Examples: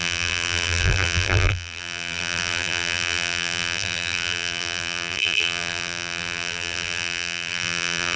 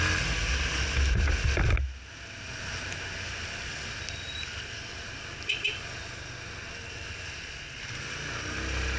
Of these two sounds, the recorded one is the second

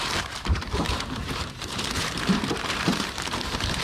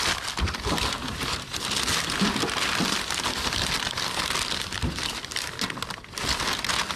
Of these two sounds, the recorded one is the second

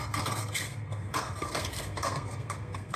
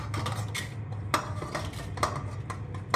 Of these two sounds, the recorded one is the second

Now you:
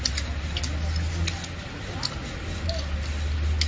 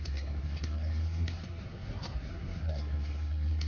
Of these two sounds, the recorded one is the first